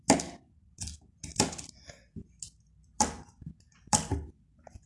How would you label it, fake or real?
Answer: real